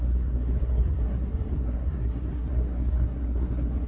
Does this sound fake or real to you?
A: fake